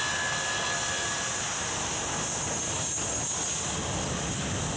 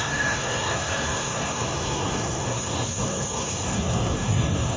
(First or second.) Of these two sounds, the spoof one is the second